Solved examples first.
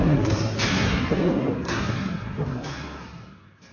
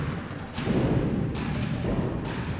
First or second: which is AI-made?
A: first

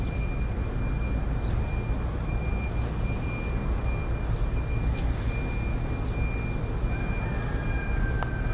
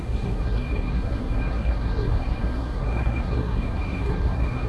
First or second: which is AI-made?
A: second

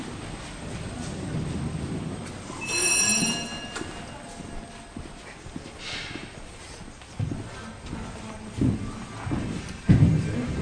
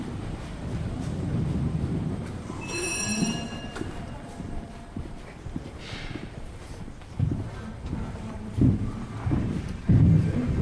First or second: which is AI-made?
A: second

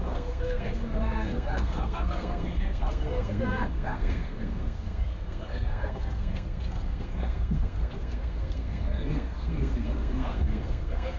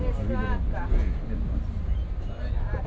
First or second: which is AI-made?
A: first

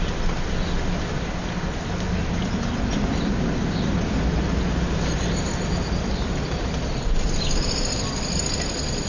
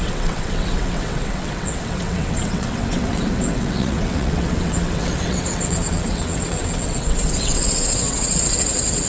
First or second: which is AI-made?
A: second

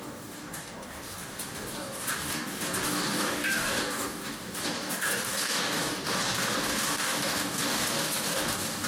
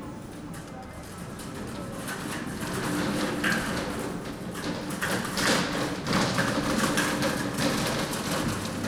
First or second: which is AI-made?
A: first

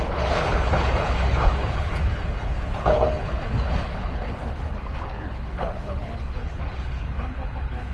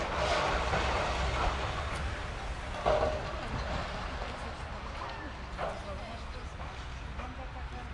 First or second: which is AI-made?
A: first